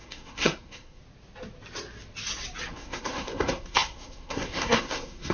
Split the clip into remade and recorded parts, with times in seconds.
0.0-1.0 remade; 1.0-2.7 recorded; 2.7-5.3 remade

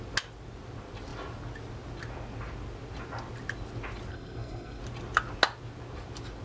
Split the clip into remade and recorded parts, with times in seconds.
0.0-4.1 recorded; 4.1-4.8 remade; 4.8-6.4 recorded

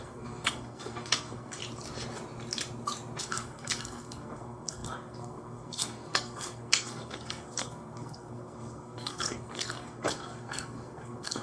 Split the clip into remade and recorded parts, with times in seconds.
0.0-1.6 remade; 1.6-3.2 recorded; 3.2-11.4 remade

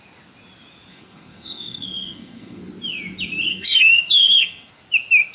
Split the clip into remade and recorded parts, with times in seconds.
0.0-0.9 recorded; 0.9-2.6 remade; 2.6-3.5 recorded; 3.5-4.7 remade; 4.7-5.3 recorded

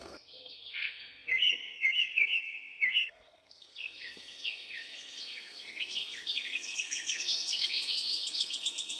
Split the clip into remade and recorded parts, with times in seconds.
0.0-9.0 remade

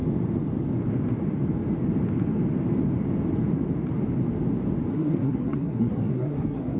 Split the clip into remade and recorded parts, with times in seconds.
0.0-4.9 recorded; 4.9-6.8 remade

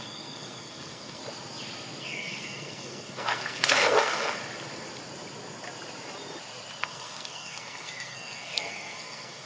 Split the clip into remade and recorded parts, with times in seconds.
0.0-1.2 remade; 1.2-2.0 recorded; 2.0-4.4 remade; 4.4-6.8 recorded; 6.8-9.5 remade